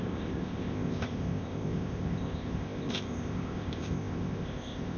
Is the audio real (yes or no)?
no